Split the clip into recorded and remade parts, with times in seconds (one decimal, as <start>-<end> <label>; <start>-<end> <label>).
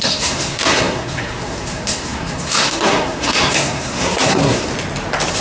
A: 0.0-4.7 remade; 4.7-5.4 recorded